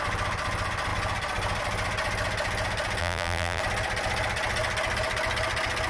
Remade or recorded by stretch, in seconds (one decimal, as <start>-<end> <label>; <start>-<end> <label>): 0.0-3.0 recorded; 3.0-3.6 remade; 3.6-5.9 recorded